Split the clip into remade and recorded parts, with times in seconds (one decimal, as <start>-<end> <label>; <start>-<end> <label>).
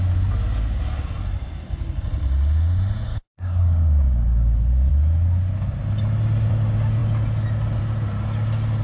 0.0-3.1 recorded; 3.1-4.9 remade; 4.9-8.8 recorded